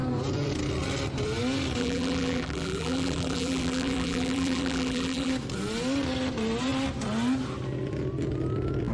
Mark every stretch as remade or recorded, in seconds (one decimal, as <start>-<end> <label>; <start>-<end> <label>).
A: 0.0-1.8 recorded; 1.8-5.3 remade; 5.3-8.9 recorded